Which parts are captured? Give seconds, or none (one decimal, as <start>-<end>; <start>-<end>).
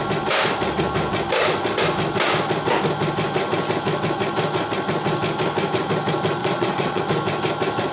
0.0-6.4; 7.0-7.9